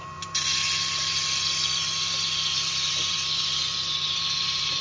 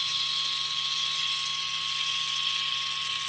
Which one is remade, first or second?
first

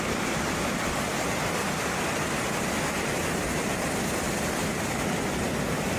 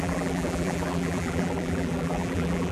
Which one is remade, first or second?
second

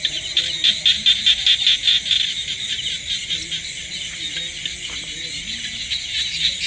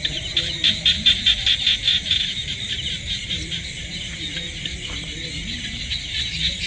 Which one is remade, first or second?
second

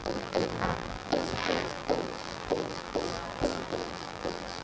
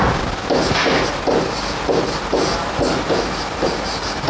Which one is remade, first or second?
first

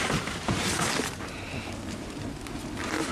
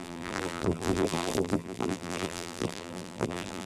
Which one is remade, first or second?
second